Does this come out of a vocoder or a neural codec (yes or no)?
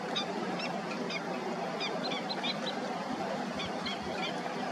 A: no